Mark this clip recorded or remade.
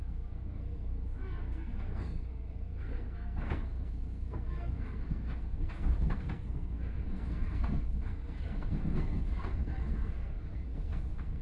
remade